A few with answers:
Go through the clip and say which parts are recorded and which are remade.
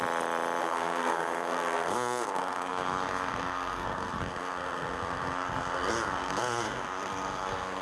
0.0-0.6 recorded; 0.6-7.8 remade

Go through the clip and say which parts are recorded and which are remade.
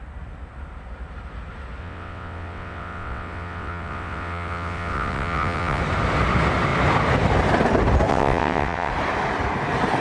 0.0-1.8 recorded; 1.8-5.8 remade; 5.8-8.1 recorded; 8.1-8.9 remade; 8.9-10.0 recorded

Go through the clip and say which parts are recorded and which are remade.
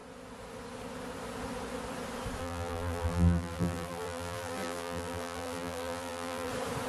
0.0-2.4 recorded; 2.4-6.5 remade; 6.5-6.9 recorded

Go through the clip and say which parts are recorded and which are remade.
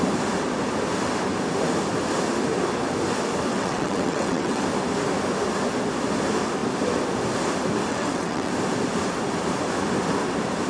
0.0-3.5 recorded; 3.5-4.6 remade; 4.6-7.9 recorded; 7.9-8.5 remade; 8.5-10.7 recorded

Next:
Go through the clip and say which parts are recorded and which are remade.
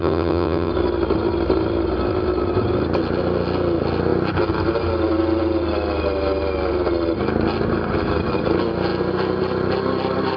0.0-0.7 remade; 0.7-10.4 recorded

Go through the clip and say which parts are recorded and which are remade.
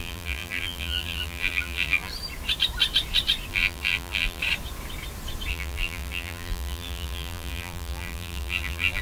0.0-2.1 remade; 2.1-3.5 recorded; 3.5-4.4 remade; 4.4-5.5 recorded; 5.5-9.0 remade